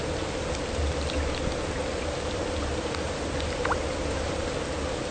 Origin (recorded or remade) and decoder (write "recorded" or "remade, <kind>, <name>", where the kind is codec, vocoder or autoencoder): recorded